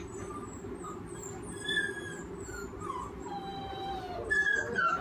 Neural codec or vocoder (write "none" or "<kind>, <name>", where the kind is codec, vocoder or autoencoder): none